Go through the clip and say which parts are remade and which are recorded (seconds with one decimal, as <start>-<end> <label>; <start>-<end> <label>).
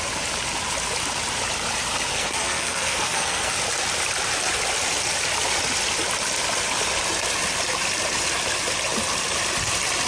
0.0-2.1 recorded; 2.1-3.5 remade; 3.5-10.1 recorded